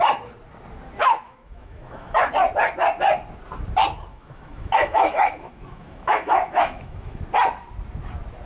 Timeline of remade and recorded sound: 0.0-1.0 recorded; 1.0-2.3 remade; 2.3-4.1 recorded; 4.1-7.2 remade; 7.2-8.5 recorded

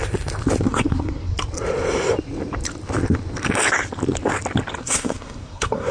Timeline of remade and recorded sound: 0.0-0.7 recorded; 0.7-1.3 remade; 1.3-4.8 recorded; 4.8-5.9 remade

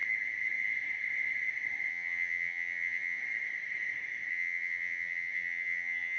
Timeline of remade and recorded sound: 0.0-1.9 recorded; 1.9-3.2 remade; 3.2-4.3 recorded; 4.3-6.2 remade

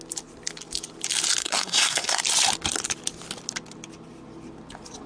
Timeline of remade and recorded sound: 0.0-1.4 recorded; 1.4-2.2 remade; 2.2-5.1 recorded

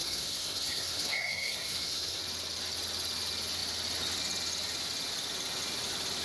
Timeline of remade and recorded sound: 0.0-2.2 remade; 2.2-6.2 recorded

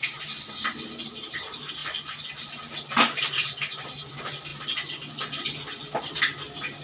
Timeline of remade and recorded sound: 0.0-6.8 recorded